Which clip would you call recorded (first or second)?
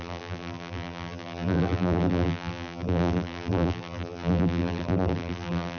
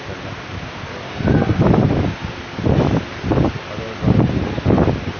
second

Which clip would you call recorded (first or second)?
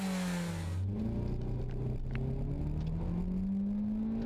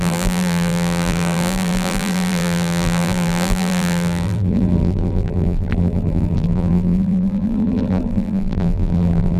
first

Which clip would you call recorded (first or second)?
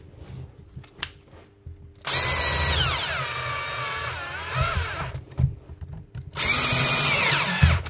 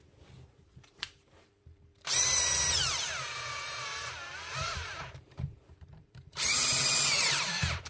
first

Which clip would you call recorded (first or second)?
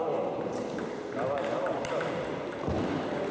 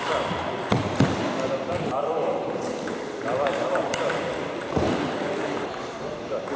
first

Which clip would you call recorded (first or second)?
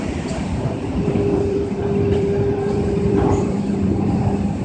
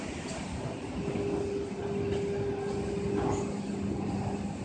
second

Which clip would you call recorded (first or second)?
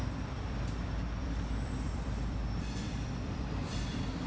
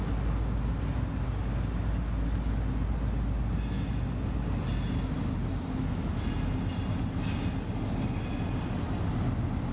second